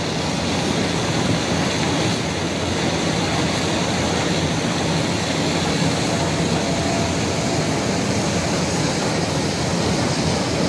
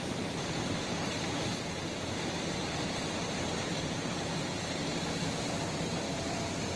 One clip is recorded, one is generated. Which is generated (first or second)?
second